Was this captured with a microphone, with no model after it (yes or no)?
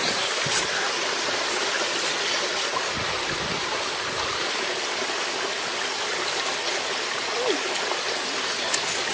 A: yes